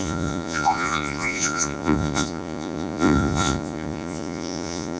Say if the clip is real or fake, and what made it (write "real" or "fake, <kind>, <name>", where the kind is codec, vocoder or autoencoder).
fake, vocoder, Vocos